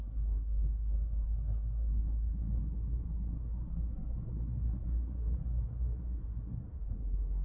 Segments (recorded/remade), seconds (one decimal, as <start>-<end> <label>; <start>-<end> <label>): 0.0-7.4 remade